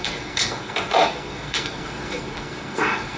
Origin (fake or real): fake